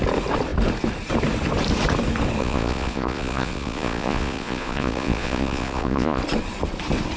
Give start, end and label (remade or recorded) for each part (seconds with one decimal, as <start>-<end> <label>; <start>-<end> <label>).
0.0-2.4 recorded; 2.4-6.2 remade; 6.2-7.2 recorded